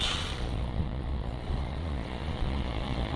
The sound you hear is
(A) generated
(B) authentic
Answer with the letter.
A